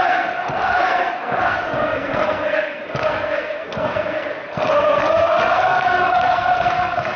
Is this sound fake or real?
fake